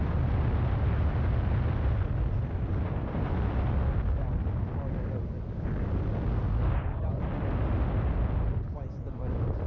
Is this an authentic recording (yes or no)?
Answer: yes